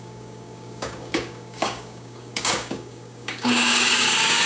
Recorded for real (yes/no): no